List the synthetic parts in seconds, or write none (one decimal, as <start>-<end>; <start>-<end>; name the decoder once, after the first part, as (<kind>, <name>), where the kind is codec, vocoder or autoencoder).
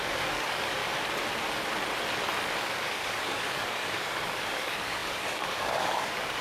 0.0-0.8 (codec, DAC); 2.6-6.4